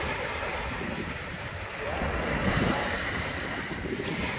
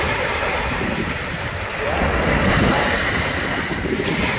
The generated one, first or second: first